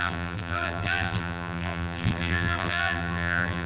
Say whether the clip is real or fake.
fake